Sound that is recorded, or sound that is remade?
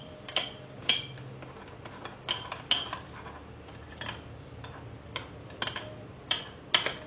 recorded